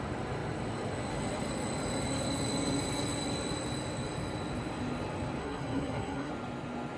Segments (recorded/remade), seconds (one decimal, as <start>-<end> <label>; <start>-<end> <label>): 0.0-5.4 recorded; 5.4-6.3 remade; 6.3-7.0 recorded